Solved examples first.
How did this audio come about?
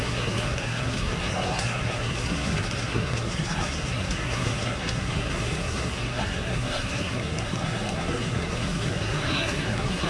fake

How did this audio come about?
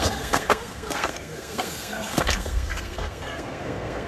fake